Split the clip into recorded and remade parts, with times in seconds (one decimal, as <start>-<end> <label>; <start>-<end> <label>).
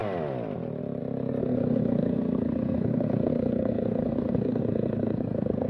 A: 0.0-1.4 recorded; 1.4-5.7 remade